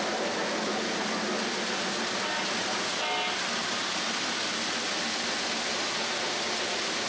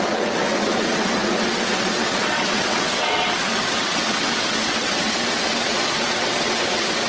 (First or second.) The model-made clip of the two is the second